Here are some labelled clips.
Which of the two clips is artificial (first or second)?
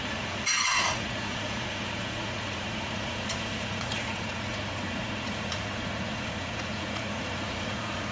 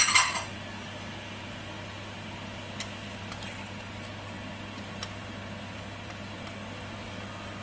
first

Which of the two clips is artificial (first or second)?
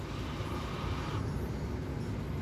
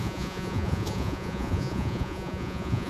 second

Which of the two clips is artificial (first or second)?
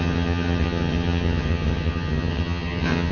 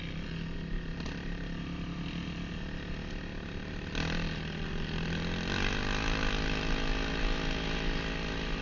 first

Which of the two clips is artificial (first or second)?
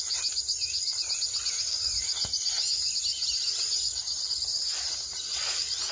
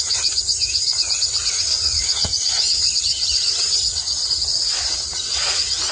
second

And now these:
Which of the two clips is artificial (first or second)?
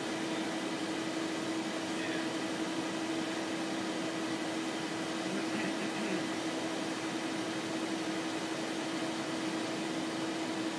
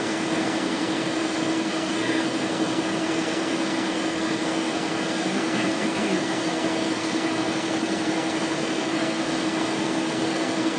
second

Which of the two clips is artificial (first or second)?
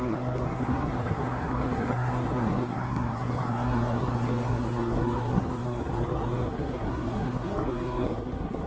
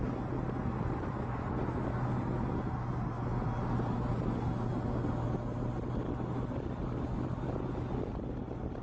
first